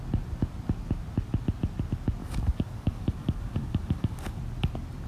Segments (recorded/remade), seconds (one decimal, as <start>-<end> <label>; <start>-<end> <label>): 0.0-2.2 recorded; 2.2-4.4 remade; 4.4-5.1 recorded